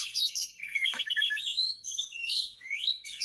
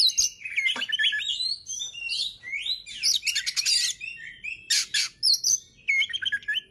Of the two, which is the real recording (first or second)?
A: second